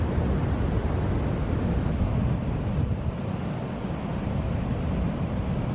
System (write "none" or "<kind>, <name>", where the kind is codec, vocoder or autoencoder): none